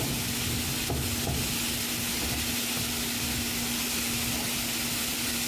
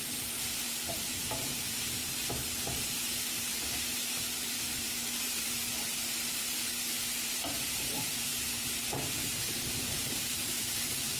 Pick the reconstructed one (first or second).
second